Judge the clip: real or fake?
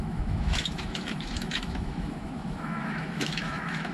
fake